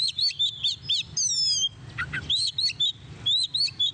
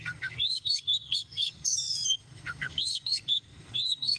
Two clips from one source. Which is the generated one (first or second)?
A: second